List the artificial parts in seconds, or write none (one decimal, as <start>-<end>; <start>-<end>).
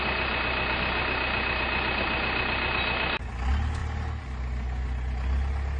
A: none